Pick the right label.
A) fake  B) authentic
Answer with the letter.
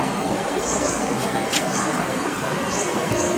A